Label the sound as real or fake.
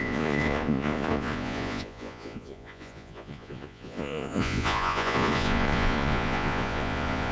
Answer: fake